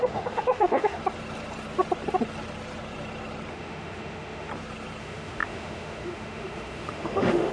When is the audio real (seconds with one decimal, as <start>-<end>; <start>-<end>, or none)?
1.0-3.5; 4.5-5.0

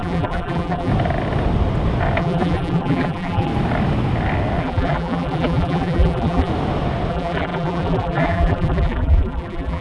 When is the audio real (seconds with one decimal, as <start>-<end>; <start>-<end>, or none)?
0.9-2.2; 3.5-4.6; 6.5-7.1